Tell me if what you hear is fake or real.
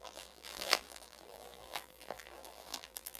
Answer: fake